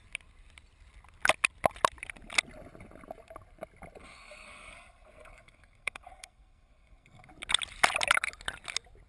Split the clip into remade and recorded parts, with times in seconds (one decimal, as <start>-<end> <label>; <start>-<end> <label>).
0.0-4.0 recorded; 4.0-7.3 remade; 7.3-9.1 recorded